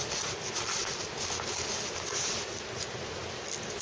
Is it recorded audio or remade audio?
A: recorded